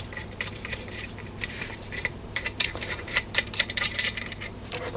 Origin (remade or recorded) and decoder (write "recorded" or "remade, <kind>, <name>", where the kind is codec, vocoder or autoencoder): remade, vocoder, BigVGAN v2